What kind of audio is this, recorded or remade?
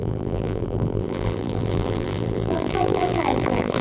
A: remade